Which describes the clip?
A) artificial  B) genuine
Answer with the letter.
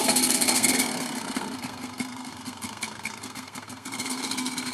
A